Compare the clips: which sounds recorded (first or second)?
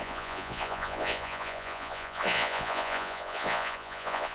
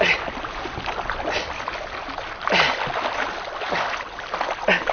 second